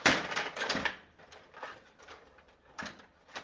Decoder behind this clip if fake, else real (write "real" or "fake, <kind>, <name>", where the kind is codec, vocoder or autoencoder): fake, vocoder, BigVGAN v2